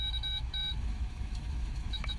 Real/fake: fake